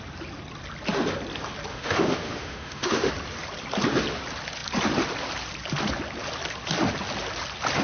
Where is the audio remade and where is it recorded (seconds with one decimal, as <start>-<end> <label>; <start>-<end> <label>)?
0.0-1.7 recorded; 1.7-3.1 remade; 3.1-7.8 recorded